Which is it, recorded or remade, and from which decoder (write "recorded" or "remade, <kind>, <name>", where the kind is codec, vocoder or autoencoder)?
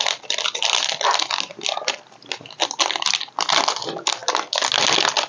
recorded